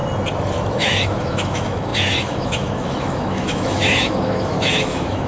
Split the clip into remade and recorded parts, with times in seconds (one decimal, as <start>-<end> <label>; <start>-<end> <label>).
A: 0.0-0.7 recorded; 0.7-5.3 remade